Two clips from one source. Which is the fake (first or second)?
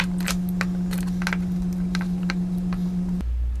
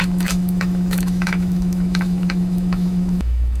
second